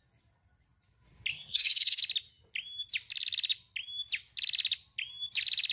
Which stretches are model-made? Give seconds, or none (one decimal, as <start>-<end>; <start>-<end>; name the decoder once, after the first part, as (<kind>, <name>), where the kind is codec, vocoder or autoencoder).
1.3-2.0 (codec, SNAC)